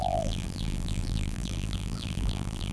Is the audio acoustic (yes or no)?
no